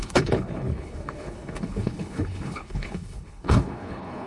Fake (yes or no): yes